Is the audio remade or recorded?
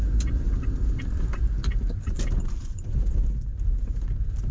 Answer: remade